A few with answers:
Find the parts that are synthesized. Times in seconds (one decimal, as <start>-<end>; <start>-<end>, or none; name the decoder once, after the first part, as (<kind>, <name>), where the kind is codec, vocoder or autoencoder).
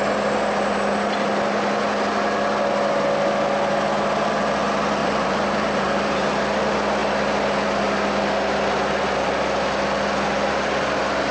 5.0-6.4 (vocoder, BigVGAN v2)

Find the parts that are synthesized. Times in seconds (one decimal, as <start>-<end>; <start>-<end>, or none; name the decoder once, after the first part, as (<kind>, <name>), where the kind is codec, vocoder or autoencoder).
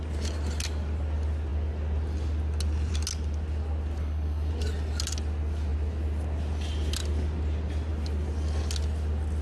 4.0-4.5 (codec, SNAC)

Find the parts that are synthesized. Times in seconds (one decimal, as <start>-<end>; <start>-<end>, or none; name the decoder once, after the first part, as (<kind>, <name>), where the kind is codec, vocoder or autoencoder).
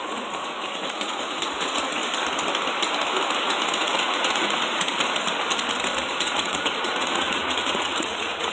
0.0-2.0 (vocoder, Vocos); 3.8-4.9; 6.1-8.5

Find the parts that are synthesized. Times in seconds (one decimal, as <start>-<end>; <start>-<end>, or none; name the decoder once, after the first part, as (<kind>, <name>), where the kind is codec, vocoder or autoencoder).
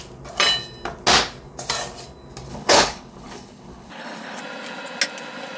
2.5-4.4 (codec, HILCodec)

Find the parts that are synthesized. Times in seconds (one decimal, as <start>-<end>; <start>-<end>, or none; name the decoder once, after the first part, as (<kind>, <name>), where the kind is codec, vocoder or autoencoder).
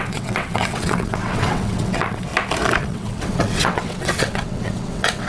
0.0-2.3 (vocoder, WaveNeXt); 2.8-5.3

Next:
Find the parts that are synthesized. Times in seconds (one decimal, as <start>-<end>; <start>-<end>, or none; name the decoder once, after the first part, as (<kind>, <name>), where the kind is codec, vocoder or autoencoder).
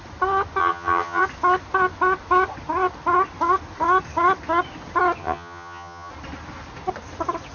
0.6-1.2 (vocoder, HiFi-GAN); 5.2-6.1